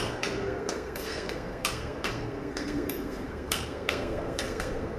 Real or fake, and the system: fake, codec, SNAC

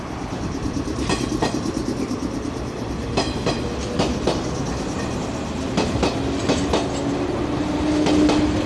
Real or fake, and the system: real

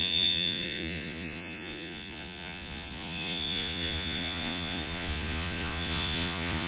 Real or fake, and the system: fake, vocoder, Vocos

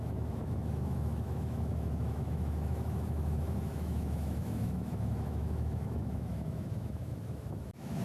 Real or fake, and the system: fake, autoencoder, DAC-VAE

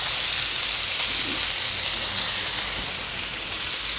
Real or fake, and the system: real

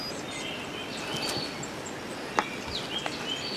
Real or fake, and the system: real